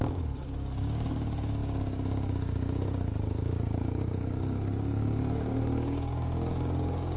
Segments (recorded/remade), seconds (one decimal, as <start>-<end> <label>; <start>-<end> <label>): 0.0-7.2 remade